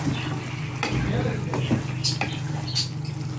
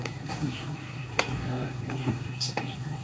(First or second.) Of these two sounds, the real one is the first